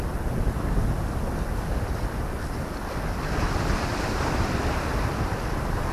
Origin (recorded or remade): recorded